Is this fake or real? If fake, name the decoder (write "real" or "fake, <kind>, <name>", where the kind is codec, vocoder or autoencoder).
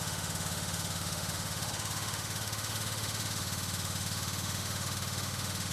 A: fake, autoencoder, DAC-VAE